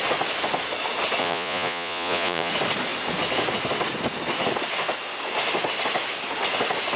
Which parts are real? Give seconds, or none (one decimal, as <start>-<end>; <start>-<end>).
0.0-1.2; 2.5-7.0